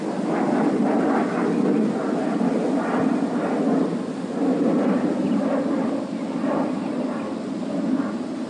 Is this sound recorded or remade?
recorded